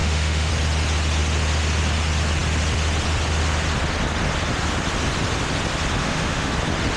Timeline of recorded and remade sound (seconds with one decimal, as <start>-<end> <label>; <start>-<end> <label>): 0.0-0.5 remade; 0.5-6.0 recorded; 6.0-6.5 remade; 6.5-7.0 recorded